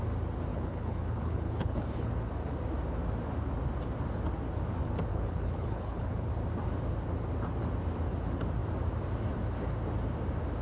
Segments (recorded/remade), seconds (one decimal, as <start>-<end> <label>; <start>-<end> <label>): 0.0-0.5 recorded; 0.5-2.1 remade; 2.1-5.1 recorded; 5.1-6.3 remade; 6.3-10.6 recorded